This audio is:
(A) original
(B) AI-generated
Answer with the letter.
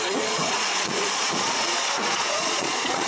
B